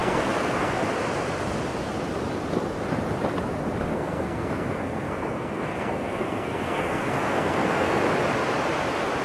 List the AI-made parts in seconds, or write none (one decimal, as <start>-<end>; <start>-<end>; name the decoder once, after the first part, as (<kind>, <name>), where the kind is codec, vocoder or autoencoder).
0.0-0.8 (codec, SNAC); 3.9-8.0